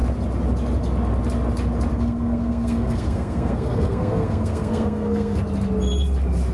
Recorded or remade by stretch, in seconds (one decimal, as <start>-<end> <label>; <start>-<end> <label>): 0.0-1.9 recorded; 1.9-5.4 remade; 5.4-6.5 recorded